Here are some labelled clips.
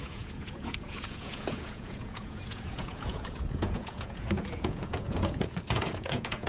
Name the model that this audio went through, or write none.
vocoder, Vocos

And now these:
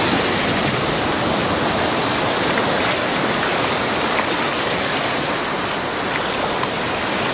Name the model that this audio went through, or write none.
none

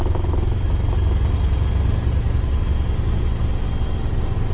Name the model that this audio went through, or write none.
none